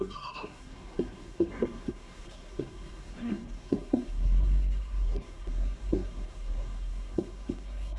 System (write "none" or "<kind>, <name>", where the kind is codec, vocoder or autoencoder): codec, SNAC